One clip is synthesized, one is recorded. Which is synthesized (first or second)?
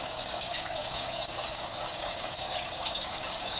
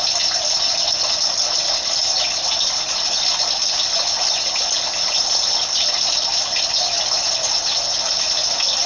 first